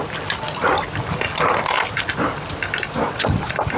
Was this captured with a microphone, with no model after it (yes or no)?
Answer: yes